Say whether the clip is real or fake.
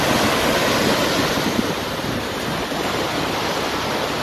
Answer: real